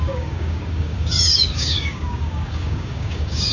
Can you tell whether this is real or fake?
fake